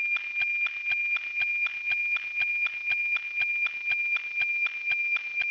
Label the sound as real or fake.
real